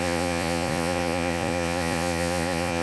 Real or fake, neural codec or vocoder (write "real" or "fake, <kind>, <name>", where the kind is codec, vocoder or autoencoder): fake, vocoder, Vocos